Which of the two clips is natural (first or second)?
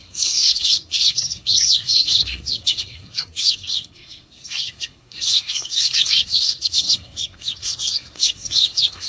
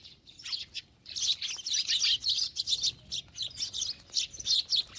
second